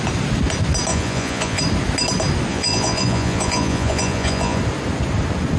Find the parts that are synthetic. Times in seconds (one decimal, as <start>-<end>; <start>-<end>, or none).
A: 0.9-1.6; 2.5-4.6